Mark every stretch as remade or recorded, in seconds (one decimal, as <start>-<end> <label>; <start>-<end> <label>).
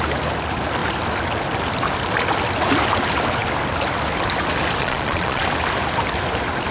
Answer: 0.0-4.8 recorded; 4.8-5.4 remade; 5.4-6.7 recorded